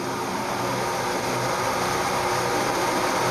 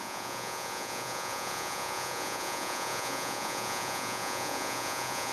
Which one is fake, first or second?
second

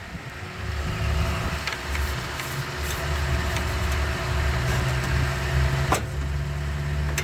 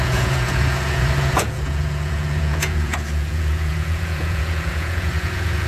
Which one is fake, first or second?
second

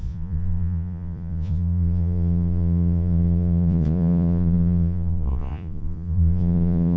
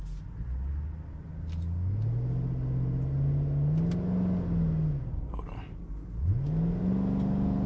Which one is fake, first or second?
first